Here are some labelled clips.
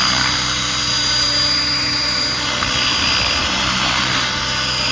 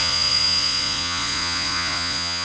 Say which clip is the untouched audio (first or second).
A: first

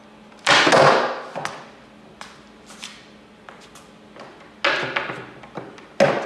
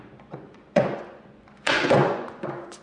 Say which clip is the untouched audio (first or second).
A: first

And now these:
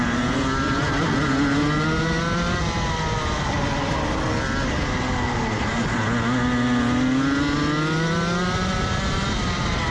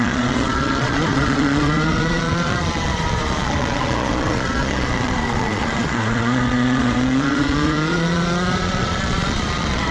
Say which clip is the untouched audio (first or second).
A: first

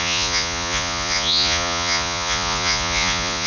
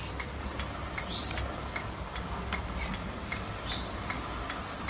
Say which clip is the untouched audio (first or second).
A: second